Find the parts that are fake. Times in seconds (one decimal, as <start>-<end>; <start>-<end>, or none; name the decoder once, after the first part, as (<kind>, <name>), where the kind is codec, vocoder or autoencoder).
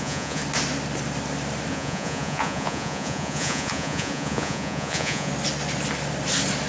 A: 0.0-0.4 (vocoder, Vocos); 1.7-5.3